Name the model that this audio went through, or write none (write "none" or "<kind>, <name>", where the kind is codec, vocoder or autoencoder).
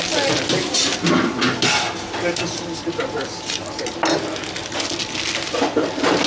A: none